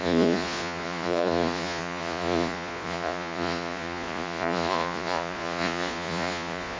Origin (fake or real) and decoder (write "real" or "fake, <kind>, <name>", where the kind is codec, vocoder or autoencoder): fake, vocoder, Vocos